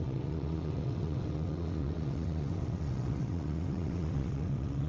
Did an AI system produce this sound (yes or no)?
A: yes